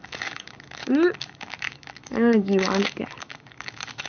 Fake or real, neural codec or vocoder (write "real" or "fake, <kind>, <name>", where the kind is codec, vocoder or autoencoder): fake, codec, DAC